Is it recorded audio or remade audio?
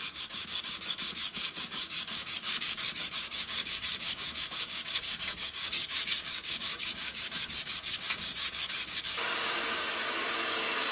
remade